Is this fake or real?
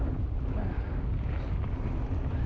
real